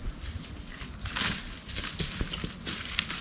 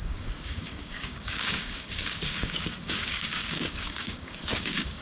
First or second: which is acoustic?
first